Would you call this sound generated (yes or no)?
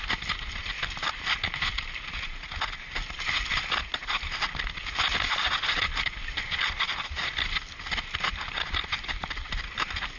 no